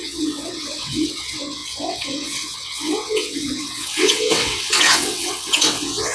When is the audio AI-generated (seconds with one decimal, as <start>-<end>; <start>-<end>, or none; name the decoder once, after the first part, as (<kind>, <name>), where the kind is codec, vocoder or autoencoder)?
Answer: 0.0-6.1 (vocoder, WaveNeXt)